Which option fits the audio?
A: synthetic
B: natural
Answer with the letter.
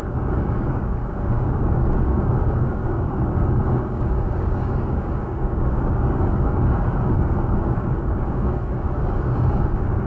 A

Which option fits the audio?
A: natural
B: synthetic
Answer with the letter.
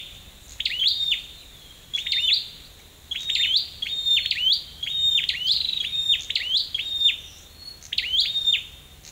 A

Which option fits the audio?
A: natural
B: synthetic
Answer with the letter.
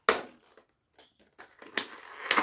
A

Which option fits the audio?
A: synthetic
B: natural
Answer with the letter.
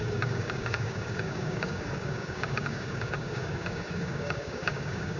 A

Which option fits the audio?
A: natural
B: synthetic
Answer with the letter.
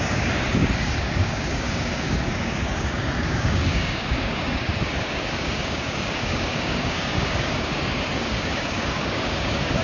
B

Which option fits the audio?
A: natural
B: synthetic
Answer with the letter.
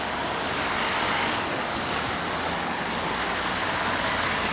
B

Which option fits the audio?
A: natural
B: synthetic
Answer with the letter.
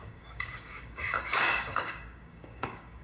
B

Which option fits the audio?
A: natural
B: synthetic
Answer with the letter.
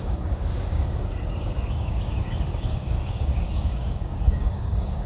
B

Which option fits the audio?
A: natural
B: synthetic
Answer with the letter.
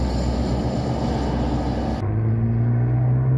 A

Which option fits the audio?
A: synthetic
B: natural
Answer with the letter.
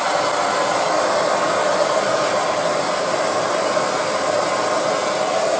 B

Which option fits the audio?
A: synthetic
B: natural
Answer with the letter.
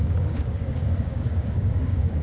A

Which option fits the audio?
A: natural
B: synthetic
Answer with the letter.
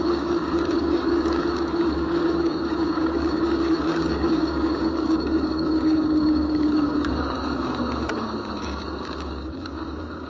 B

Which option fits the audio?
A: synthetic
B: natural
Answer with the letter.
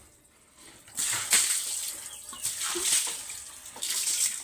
B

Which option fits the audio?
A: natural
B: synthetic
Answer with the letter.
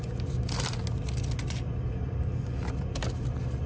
A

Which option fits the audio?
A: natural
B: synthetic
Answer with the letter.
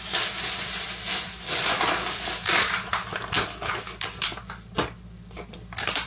A